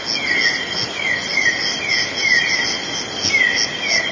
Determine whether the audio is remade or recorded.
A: recorded